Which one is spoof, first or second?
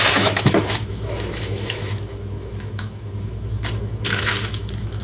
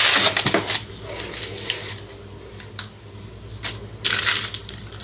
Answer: first